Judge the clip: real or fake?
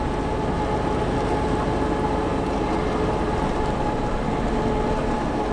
real